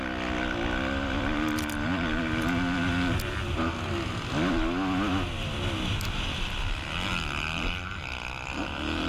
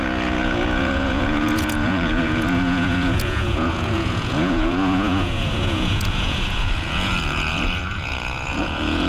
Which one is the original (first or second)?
first